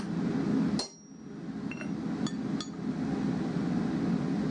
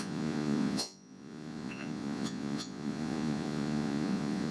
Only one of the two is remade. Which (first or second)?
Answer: second